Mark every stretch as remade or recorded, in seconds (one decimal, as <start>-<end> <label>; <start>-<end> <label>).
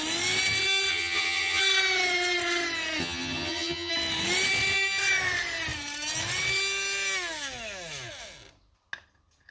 0.0-0.9 recorded; 0.9-1.6 remade; 1.6-3.0 recorded; 3.0-3.9 remade; 3.9-9.5 recorded